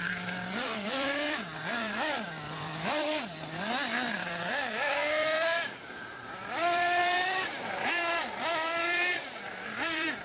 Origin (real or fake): fake